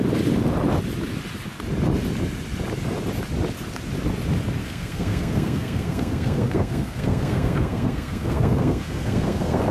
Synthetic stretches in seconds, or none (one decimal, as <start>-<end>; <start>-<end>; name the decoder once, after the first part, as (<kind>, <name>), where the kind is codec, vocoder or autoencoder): 4.6-9.7 (codec, SNAC)